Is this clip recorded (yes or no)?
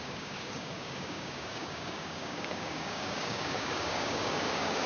no